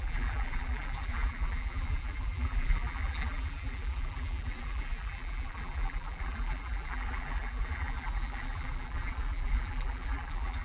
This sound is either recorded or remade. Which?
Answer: remade